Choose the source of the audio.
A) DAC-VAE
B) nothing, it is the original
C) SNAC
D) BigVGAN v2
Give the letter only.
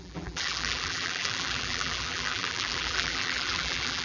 D